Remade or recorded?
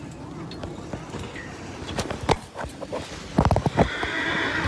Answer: recorded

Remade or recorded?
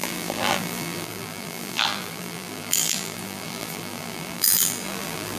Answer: remade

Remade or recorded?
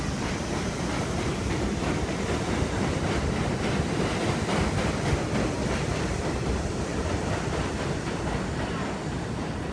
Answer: remade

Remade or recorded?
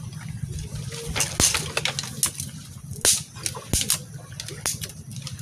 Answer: recorded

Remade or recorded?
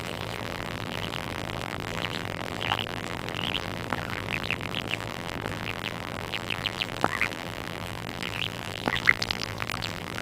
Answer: remade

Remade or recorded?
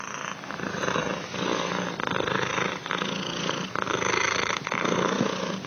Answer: recorded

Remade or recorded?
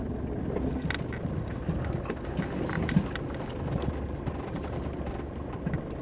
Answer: recorded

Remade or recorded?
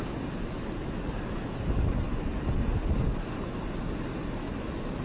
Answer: recorded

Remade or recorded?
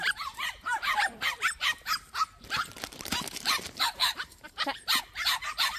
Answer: remade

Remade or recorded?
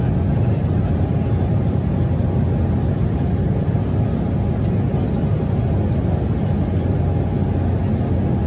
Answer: recorded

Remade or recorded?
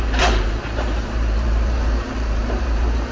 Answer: remade